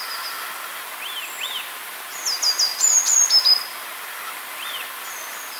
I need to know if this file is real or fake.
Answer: real